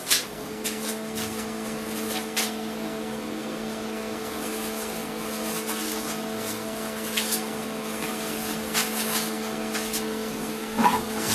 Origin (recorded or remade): remade